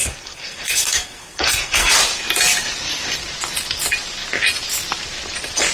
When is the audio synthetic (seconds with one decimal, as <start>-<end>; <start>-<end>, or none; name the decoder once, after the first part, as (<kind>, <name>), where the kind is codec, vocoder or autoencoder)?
0.0-1.9 (codec, SNAC)